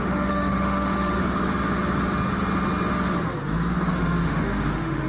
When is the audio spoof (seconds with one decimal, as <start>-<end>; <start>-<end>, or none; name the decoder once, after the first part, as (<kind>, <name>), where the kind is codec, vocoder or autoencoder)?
0.0-1.2 (autoencoder, DAC-VAE); 3.9-5.1